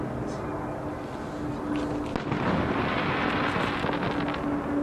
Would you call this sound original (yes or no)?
yes